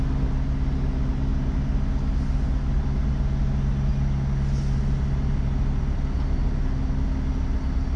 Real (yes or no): yes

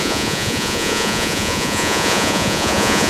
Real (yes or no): no